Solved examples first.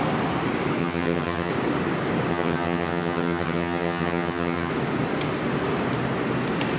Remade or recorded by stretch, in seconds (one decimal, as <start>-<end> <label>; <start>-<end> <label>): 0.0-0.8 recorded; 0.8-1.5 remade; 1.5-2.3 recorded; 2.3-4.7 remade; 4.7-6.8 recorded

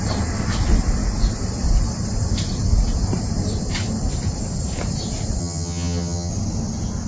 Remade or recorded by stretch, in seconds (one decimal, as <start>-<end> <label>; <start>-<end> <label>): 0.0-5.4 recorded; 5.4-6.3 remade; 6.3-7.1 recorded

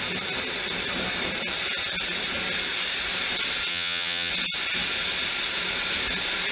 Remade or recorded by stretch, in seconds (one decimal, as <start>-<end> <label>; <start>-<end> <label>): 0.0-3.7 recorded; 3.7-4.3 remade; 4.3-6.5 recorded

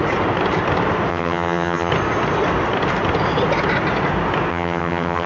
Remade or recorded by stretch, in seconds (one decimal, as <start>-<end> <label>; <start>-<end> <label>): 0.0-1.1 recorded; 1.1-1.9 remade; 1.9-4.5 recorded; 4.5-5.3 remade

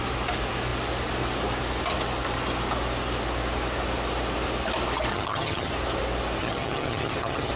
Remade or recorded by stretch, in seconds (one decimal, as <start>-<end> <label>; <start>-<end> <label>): 0.0-5.1 recorded; 5.1-5.7 remade; 5.7-6.4 recorded; 6.4-7.5 remade